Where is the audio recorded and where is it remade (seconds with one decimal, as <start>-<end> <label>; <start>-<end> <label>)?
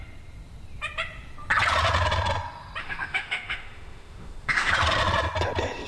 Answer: 0.0-2.8 recorded; 2.8-4.7 remade; 4.7-5.9 recorded